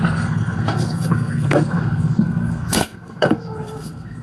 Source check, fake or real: fake